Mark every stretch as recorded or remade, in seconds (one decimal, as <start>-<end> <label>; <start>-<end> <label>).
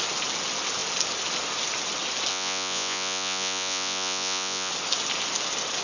0.0-2.3 recorded; 2.3-4.7 remade; 4.7-5.8 recorded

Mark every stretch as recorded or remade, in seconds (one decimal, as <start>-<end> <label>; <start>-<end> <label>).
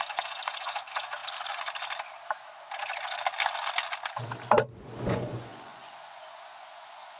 0.0-1.2 remade; 1.2-4.7 recorded; 4.7-7.2 remade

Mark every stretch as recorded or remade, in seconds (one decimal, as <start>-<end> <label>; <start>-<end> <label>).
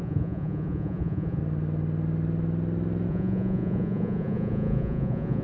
0.0-1.4 remade; 1.4-3.1 recorded; 3.1-5.4 remade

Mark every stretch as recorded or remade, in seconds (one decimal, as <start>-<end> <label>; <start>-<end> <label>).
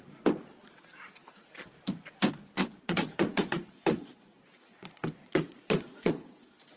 0.0-2.6 recorded; 2.6-6.8 remade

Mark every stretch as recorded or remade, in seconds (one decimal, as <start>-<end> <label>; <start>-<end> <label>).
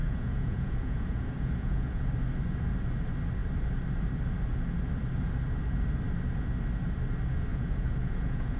0.0-2.1 remade; 2.1-7.5 recorded; 7.5-8.6 remade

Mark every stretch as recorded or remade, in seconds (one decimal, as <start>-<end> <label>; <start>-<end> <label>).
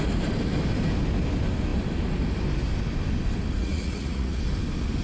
0.0-3.6 recorded; 3.6-4.4 remade; 4.4-5.0 recorded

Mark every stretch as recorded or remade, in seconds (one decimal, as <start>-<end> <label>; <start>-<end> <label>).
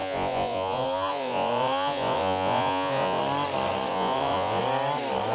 0.0-3.2 remade; 3.2-3.9 recorded; 3.9-4.6 remade; 4.6-5.3 recorded